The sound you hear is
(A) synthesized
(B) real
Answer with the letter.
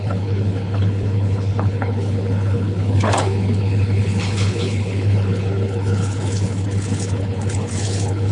A